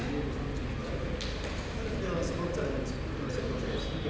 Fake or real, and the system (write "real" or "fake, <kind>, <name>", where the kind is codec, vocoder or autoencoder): real